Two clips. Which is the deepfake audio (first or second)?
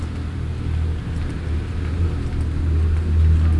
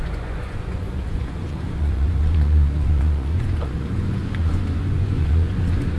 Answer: second